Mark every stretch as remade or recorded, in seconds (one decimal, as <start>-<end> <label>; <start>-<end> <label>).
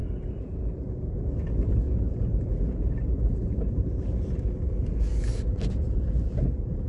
0.0-0.6 remade; 0.6-2.3 recorded; 2.3-4.7 remade; 4.7-6.9 recorded